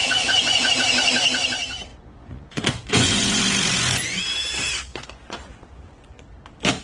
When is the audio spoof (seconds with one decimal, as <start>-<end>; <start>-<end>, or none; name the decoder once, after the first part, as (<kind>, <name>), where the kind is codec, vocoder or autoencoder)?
0.0-0.7 (vocoder, Vocos); 1.9-4.2; 4.9-6.2